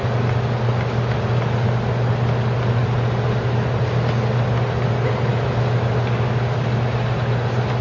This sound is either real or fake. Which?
real